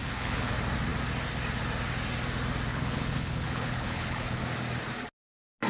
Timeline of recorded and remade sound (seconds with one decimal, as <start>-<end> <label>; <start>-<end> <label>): 0.0-0.5 remade; 0.5-2.7 recorded; 2.7-4.4 remade; 4.4-5.7 recorded